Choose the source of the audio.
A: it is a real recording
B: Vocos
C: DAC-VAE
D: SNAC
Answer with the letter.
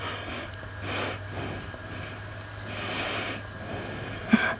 A